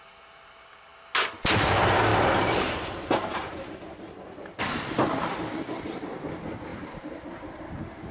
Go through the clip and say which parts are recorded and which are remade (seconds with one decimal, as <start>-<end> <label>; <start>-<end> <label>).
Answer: 0.0-2.1 recorded; 2.1-4.6 remade; 4.6-6.7 recorded; 6.7-8.1 remade